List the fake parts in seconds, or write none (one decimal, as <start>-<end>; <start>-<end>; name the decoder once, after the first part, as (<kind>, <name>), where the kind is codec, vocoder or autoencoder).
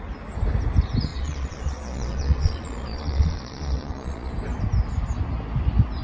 1.1-4.3 (vocoder, Vocos)